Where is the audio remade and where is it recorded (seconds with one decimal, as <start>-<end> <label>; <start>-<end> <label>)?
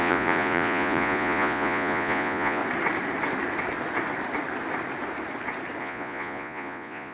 0.0-2.6 remade; 2.6-5.8 recorded; 5.8-7.1 remade